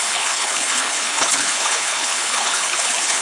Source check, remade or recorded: remade